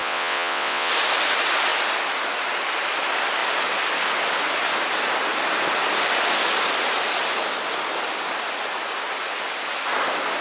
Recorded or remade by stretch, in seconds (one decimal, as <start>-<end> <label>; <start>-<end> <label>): 0.0-0.9 remade; 0.9-10.4 recorded

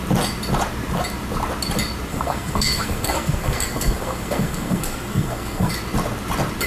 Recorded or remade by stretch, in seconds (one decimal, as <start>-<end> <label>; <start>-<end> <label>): 0.0-2.1 recorded; 2.1-5.7 remade; 5.7-6.7 recorded

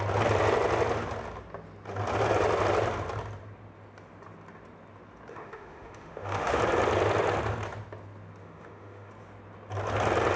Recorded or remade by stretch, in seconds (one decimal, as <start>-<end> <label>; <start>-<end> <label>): 0.0-5.3 recorded; 5.3-6.6 remade; 6.6-8.4 recorded; 8.4-9.1 remade; 9.1-10.4 recorded

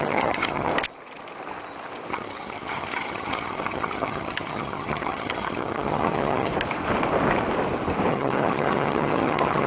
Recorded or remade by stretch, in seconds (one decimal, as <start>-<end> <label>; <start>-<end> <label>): 0.0-0.7 remade; 0.7-2.1 recorded; 2.1-6.5 remade; 6.5-8.1 recorded; 8.1-9.7 remade

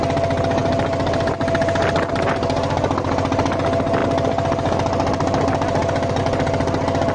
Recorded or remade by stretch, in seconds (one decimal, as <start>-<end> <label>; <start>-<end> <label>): 0.0-7.1 recorded

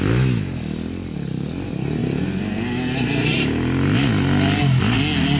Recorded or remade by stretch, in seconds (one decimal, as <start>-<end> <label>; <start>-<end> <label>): 0.0-5.4 recorded